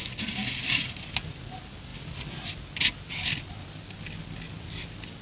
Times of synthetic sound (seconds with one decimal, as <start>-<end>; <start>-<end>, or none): none